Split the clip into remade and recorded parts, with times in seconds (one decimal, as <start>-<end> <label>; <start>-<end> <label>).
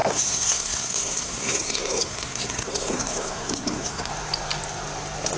0.0-4.1 remade; 4.1-5.4 recorded